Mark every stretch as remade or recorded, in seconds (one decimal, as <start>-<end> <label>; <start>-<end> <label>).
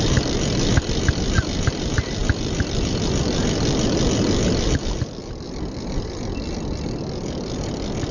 0.0-8.1 recorded